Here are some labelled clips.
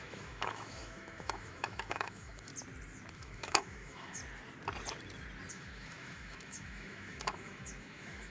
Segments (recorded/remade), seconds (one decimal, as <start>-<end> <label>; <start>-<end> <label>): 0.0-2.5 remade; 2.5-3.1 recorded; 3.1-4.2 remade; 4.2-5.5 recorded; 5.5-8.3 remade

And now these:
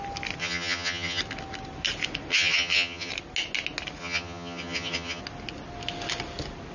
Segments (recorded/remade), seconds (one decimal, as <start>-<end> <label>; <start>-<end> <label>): 0.0-0.4 recorded; 0.4-1.2 remade; 1.2-2.3 recorded; 2.3-3.1 remade; 3.1-4.0 recorded; 4.0-5.2 remade; 5.2-6.7 recorded

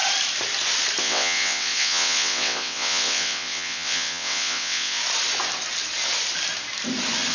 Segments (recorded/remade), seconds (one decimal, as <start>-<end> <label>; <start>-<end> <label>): 0.0-1.0 recorded; 1.0-5.0 remade; 5.0-7.3 recorded

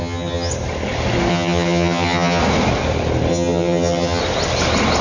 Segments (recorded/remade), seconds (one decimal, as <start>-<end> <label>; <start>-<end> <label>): 0.0-0.5 remade; 0.5-1.3 recorded; 1.3-2.4 remade; 2.4-3.3 recorded; 3.3-4.2 remade; 4.2-5.0 recorded

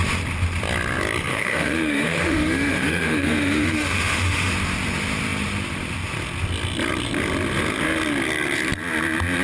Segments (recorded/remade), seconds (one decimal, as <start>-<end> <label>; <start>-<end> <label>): 0.0-1.3 recorded; 1.3-4.5 remade; 4.5-9.4 recorded

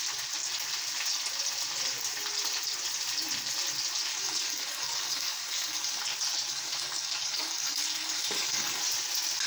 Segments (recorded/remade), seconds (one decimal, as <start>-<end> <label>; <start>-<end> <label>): 0.0-4.1 recorded; 4.1-6.0 remade; 6.0-6.5 recorded; 6.5-8.8 remade; 8.8-9.5 recorded

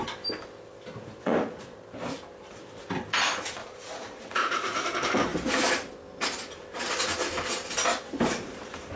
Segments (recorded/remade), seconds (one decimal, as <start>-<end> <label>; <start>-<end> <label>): 0.0-1.2 recorded; 1.2-1.8 remade; 1.8-3.6 recorded; 3.6-4.5 remade; 4.5-9.0 recorded